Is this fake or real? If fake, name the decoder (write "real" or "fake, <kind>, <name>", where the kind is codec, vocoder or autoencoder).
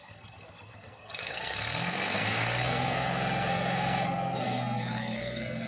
fake, codec, SNAC